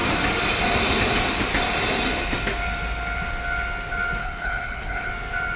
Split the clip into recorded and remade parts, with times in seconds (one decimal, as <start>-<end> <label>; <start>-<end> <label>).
0.0-4.2 recorded; 4.2-5.1 remade; 5.1-5.6 recorded